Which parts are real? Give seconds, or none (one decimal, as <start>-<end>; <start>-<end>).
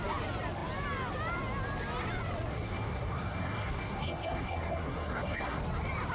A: 0.0-2.5; 5.6-6.1